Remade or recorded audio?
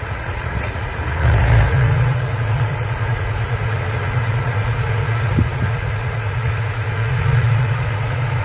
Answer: remade